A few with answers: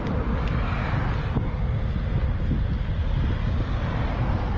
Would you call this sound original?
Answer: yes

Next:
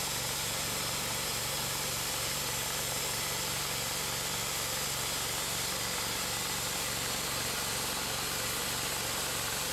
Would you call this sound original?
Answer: yes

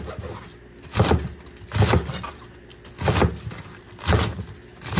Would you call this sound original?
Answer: yes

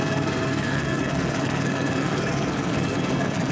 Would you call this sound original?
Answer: no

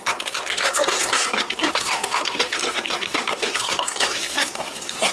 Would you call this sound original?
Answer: no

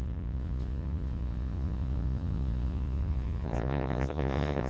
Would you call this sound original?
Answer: no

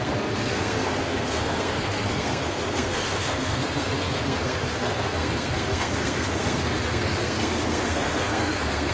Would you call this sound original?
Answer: no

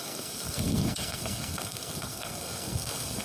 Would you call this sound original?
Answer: no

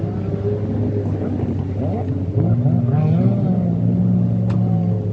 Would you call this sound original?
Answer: yes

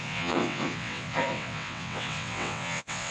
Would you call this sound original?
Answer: no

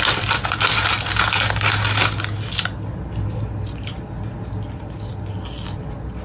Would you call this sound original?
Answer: yes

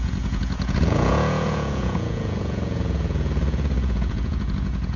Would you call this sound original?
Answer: no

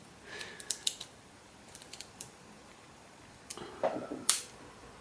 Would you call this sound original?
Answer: no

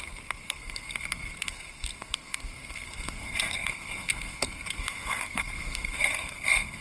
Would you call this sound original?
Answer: no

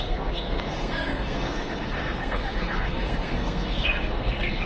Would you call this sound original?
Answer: no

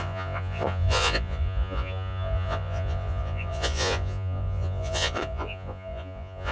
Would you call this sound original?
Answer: no